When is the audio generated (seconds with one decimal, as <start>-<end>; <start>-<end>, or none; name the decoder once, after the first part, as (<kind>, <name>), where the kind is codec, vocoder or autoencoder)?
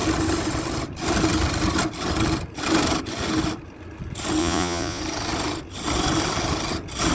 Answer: 4.4-5.0 (vocoder, Vocos)